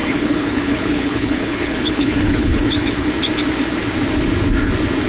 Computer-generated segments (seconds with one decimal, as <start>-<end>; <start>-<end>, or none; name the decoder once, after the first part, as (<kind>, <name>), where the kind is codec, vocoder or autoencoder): 0.0-3.1 (codec, HILCodec)